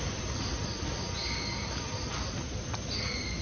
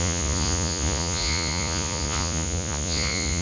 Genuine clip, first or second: first